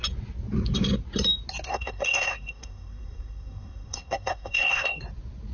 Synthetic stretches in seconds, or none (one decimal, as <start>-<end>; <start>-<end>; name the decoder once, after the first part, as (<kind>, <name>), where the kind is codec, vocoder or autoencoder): 1.7-5.0 (codec, SNAC)